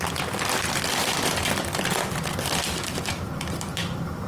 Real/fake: real